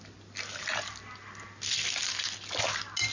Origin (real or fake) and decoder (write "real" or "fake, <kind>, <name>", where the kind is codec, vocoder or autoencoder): real